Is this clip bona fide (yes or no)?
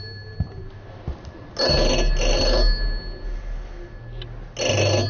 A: yes